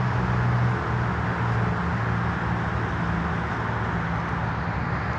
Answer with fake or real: real